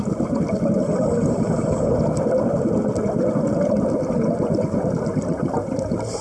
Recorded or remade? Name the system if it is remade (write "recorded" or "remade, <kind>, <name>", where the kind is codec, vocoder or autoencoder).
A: recorded